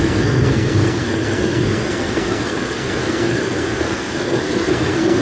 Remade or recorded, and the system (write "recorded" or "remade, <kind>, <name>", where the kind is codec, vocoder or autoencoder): remade, codec, SNAC